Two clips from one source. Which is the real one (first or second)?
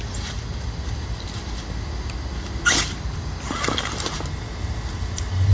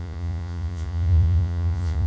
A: first